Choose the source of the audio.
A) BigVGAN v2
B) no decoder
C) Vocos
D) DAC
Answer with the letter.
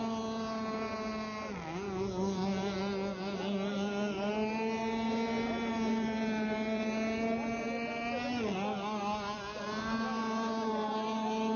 B